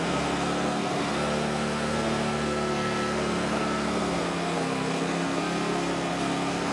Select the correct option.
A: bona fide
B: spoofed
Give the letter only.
B